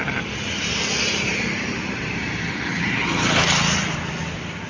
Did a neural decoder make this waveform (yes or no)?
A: no